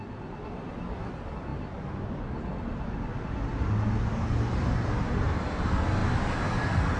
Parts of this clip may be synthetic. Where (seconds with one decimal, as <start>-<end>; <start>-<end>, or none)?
none